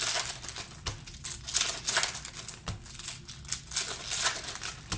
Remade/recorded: recorded